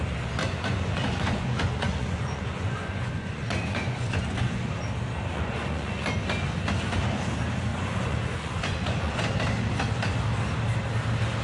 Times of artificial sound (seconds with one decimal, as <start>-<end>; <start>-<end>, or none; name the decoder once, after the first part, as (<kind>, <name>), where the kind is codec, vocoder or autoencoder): 0.4-4.5 (vocoder, Vocos); 5.3-6.1; 7.7-9.2